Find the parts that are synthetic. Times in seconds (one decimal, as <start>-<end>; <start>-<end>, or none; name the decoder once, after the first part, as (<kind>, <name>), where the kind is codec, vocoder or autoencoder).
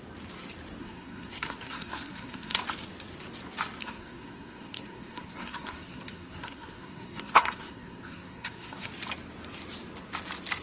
0.8-2.6 (codec, SNAC); 3.8-8.9